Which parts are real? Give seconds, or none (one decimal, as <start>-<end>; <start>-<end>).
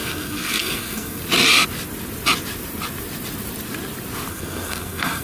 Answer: 1.2-4.3